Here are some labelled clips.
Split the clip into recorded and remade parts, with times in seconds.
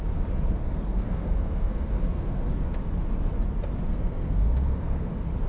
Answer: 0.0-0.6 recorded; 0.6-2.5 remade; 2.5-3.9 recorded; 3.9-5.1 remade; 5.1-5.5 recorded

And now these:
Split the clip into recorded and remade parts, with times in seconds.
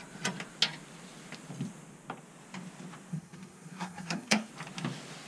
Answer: 0.0-3.1 recorded; 3.1-4.5 remade; 4.5-5.3 recorded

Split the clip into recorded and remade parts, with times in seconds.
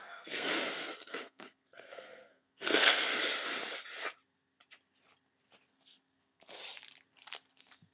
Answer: 0.0-0.5 remade; 0.5-1.1 recorded; 1.1-3.1 remade; 3.1-5.7 recorded; 5.7-6.6 remade; 6.6-7.5 recorded; 7.5-7.9 remade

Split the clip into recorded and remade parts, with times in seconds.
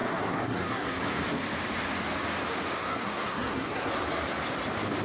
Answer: 0.0-1.0 remade; 1.0-2.8 recorded; 2.8-3.9 remade; 3.9-5.0 recorded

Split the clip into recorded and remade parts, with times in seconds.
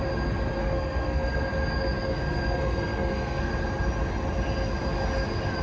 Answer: 0.0-0.6 recorded; 0.6-1.4 remade; 1.4-2.1 recorded; 2.1-3.5 remade; 3.5-5.6 recorded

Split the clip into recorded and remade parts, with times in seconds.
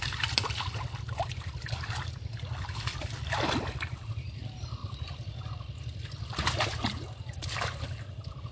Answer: 0.0-8.5 recorded